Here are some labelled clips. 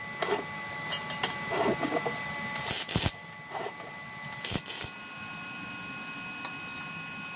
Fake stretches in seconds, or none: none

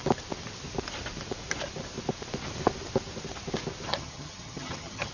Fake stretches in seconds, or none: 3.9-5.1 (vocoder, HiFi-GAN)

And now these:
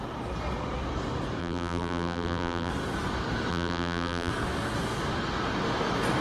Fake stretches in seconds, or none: 1.4-2.7 (vocoder, BigVGAN v2); 3.5-4.3

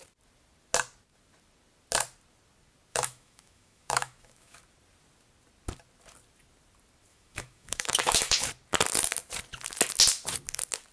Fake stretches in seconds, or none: 2.9-4.6 (autoencoder, DAC-VAE); 7.1-8.5

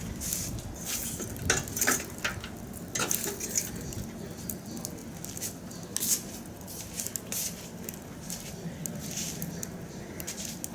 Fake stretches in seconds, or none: none